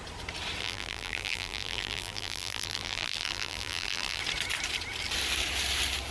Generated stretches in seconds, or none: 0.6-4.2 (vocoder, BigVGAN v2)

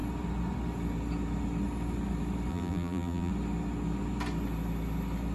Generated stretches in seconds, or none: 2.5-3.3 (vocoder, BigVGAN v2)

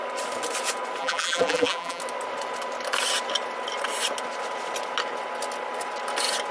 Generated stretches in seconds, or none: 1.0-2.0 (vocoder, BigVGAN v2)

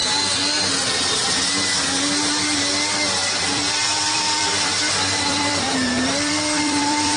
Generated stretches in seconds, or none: 3.2-7.2 (vocoder, BigVGAN v2)